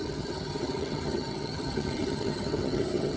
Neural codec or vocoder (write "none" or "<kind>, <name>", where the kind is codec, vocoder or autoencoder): vocoder, HiFi-GAN